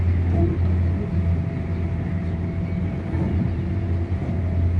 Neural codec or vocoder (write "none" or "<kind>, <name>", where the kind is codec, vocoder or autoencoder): none